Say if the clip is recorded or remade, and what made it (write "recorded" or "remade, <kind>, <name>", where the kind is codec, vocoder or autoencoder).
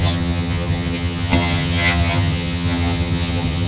remade, vocoder, HiFi-GAN